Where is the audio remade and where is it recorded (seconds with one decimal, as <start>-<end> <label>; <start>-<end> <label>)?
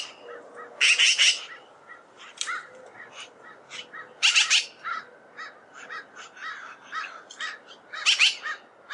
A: 0.0-1.2 recorded; 1.2-4.2 remade; 4.2-6.4 recorded; 6.4-7.2 remade; 7.2-8.9 recorded